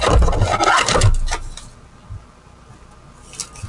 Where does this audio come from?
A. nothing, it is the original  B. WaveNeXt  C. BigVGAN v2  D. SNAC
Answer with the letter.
A